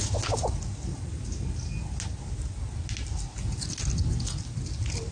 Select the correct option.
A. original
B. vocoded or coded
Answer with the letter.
A